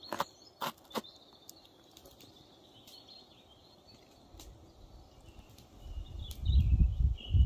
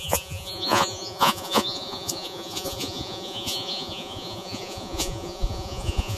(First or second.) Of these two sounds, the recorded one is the first